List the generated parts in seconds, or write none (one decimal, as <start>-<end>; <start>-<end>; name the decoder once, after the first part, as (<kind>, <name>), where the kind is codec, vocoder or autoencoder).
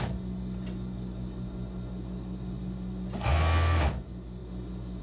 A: none